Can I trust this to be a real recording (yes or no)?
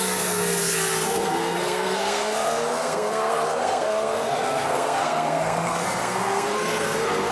no